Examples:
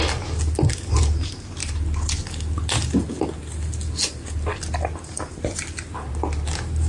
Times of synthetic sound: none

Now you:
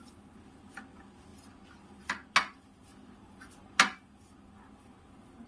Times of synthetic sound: none